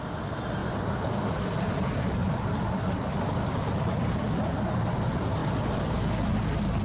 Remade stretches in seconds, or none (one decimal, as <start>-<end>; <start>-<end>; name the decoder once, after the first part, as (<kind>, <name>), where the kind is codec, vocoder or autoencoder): 0.6-1.7 (vocoder, BigVGAN v2); 2.2-3.3